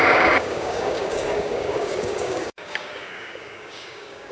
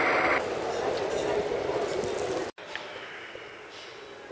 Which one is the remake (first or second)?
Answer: first